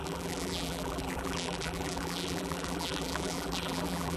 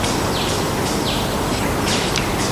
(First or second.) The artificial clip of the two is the first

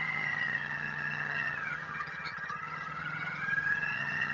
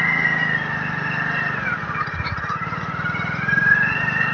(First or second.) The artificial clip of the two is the first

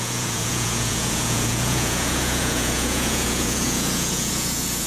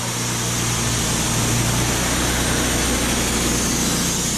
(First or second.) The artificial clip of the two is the first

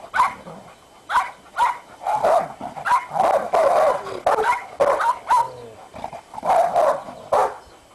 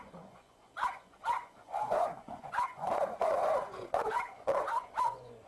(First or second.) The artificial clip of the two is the second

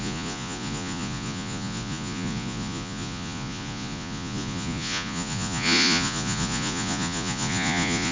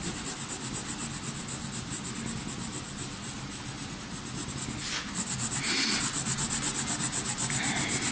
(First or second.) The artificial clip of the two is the first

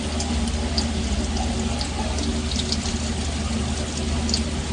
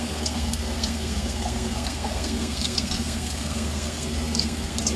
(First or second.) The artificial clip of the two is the second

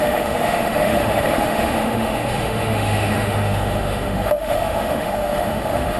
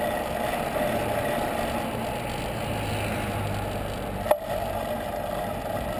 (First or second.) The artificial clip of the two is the first